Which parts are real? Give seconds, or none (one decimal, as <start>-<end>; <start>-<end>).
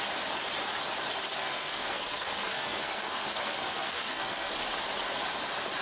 0.0-1.4; 4.5-5.8